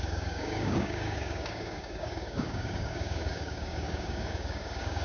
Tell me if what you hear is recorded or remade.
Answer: remade